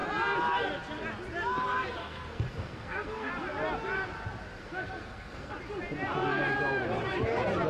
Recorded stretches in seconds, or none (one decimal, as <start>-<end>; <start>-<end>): 0.0-2.0; 3.3-4.6; 5.5-7.7